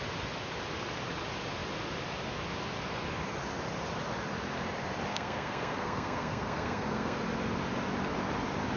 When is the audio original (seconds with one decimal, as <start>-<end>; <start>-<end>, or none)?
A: 0.0-5.1; 7.2-8.8